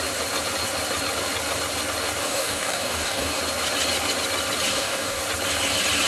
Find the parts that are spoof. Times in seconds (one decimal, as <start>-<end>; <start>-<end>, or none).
2.2-3.4; 4.7-5.2